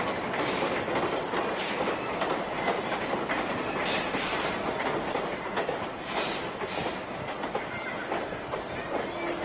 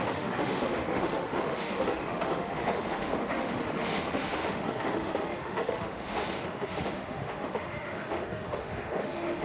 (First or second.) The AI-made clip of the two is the second